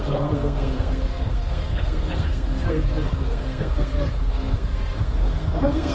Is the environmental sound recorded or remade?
remade